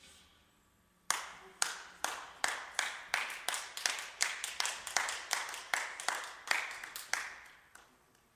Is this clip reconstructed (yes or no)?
no